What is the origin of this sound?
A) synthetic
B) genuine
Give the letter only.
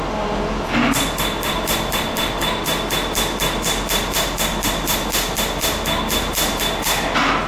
B